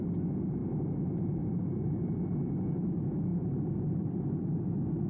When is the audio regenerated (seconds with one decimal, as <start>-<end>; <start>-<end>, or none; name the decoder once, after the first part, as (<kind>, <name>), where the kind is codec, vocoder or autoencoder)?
none

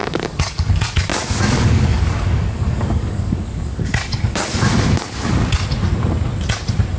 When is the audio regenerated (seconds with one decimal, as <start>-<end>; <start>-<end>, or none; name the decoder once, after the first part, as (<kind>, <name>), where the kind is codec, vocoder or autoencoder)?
0.0-0.7 (codec, DAC); 1.1-4.6

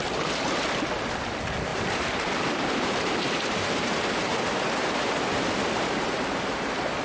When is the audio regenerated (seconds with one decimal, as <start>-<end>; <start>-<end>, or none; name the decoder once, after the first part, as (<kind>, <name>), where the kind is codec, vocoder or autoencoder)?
1.7-4.4 (vocoder, BigVGAN v2)